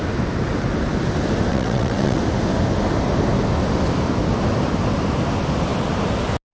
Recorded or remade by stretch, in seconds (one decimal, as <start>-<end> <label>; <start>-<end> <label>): 0.0-1.5 recorded; 1.5-2.2 remade; 2.2-6.5 recorded